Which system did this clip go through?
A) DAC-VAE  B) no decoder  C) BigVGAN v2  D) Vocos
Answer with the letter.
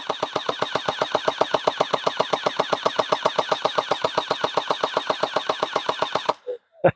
C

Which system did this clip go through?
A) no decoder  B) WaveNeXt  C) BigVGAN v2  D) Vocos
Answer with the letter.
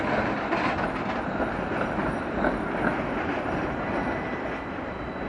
A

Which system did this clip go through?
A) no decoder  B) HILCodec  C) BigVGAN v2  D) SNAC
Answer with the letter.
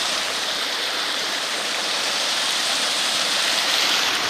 C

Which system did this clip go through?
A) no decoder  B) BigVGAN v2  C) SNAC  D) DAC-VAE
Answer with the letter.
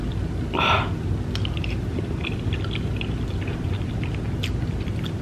A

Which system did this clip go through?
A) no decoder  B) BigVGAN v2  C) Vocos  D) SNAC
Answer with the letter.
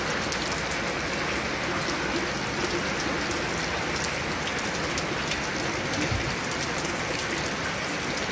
A